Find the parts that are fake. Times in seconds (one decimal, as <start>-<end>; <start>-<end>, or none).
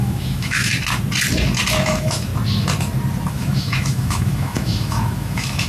0.0-0.7; 1.8-2.3; 3.3-5.7